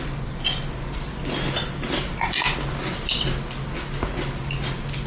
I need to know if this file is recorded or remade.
recorded